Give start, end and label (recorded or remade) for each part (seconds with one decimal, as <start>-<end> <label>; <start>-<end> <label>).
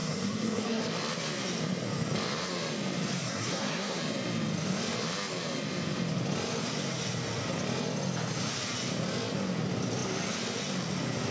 0.0-0.8 remade; 0.8-3.2 recorded; 3.2-4.0 remade; 4.0-11.3 recorded